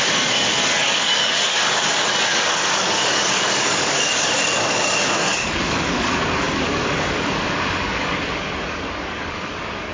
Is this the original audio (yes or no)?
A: no